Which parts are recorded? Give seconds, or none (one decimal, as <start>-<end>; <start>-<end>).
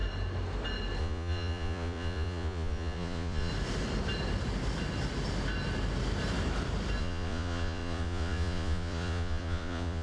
0.0-1.0; 3.5-7.0